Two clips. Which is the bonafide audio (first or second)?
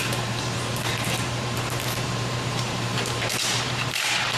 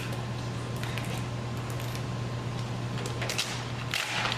second